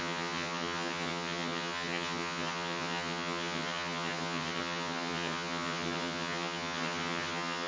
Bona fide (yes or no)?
no